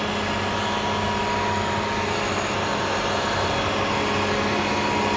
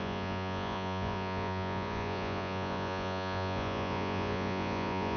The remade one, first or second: second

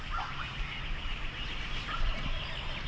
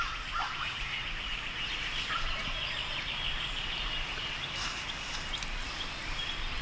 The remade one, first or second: first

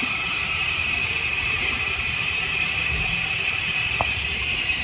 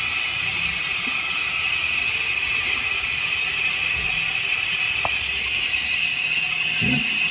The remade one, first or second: first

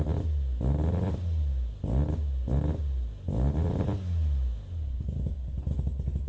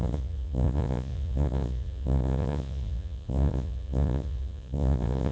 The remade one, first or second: second